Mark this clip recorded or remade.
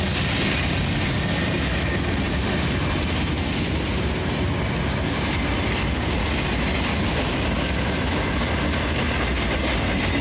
recorded